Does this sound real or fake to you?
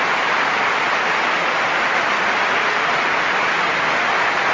real